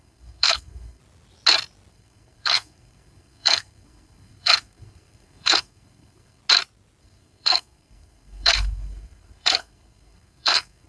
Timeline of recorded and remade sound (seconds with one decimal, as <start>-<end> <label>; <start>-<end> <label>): 0.0-1.0 remade; 1.0-1.9 recorded; 1.9-6.4 remade; 6.4-7.0 recorded; 7.0-10.9 remade

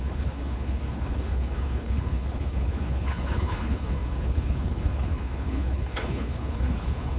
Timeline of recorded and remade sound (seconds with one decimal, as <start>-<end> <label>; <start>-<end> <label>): 0.0-7.2 remade

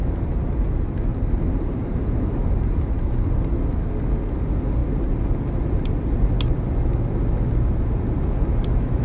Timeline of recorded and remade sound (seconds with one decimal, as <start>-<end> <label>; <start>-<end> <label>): 0.0-1.1 recorded; 1.1-3.3 remade; 3.3-9.0 recorded

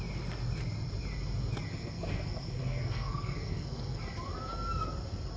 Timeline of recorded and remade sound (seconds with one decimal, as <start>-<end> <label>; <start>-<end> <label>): 0.0-1.7 recorded; 1.7-4.0 remade; 4.0-5.4 recorded

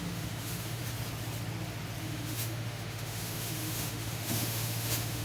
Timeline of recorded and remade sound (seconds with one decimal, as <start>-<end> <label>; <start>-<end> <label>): 0.0-0.8 remade; 0.8-2.0 recorded; 2.0-5.2 remade